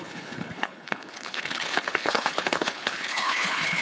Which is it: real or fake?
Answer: fake